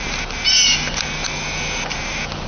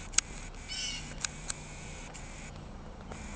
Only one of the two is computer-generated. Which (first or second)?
second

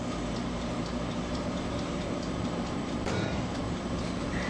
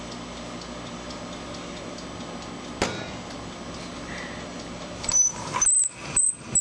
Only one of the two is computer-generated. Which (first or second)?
first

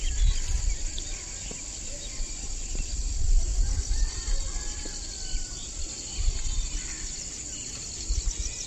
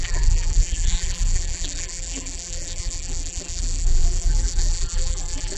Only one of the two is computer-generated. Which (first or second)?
second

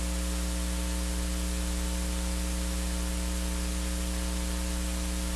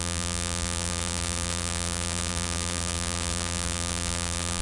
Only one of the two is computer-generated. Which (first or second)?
second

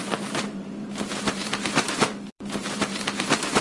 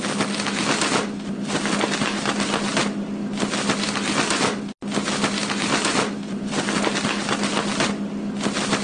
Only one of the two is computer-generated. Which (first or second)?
first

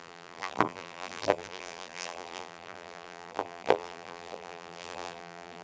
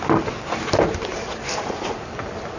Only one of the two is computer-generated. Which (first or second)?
first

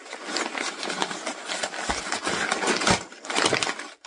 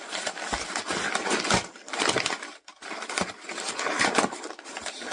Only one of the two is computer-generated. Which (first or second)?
second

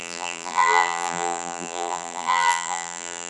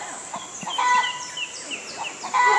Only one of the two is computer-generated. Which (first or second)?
first